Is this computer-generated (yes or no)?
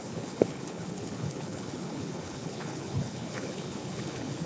yes